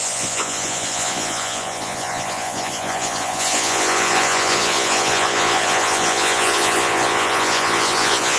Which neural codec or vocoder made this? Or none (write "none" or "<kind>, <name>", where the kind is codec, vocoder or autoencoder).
vocoder, Vocos